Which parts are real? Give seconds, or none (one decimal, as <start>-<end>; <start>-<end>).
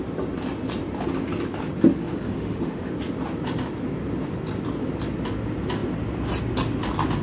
0.0-2.0; 2.9-7.2